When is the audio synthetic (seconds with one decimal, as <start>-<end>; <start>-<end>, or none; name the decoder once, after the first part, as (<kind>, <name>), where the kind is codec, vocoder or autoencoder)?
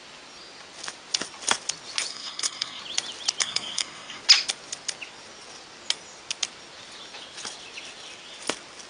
2.1-2.8 (codec, SNAC); 3.4-4.2